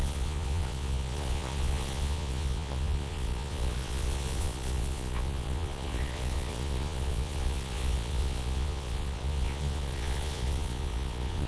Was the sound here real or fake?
fake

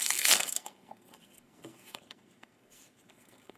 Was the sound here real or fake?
fake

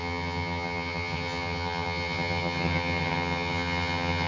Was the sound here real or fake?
fake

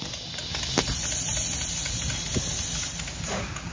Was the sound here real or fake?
real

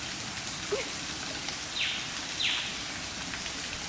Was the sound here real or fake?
real